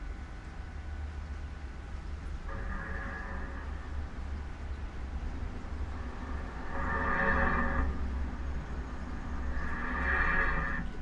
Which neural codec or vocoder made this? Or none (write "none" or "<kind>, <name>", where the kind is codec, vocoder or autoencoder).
none